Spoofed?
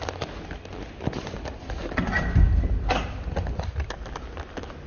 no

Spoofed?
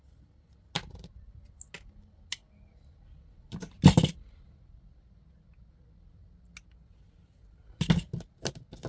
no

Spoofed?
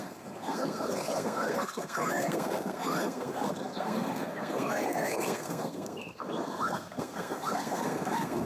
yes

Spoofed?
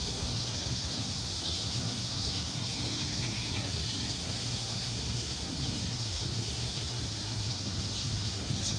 yes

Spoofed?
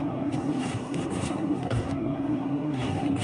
yes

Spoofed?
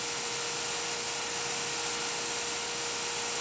no